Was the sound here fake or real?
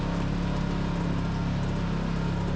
real